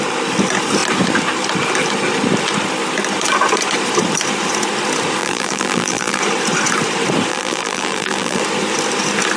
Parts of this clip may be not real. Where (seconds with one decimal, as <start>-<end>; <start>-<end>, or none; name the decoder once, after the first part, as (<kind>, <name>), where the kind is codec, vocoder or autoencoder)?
5.2-6.2 (vocoder, BigVGAN v2); 7.3-8.4